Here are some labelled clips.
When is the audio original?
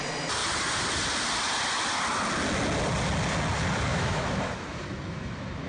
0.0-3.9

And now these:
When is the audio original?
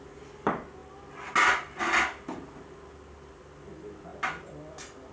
0.0-5.1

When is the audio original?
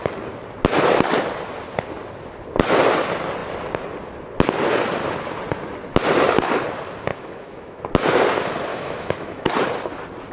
0.0-7.1; 7.8-8.7; 9.5-10.3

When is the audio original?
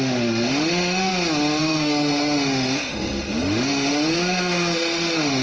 1.1-1.6